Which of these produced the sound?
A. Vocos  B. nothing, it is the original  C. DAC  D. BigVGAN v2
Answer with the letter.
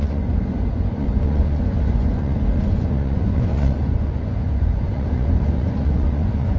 A